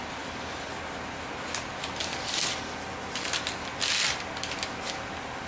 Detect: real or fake real